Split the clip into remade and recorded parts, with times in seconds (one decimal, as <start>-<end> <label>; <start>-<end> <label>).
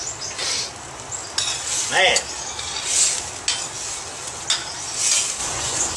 0.0-5.4 recorded; 5.4-6.0 remade